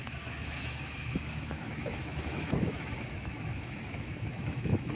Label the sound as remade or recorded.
remade